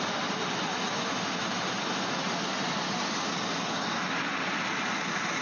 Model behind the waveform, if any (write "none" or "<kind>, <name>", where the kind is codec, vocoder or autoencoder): none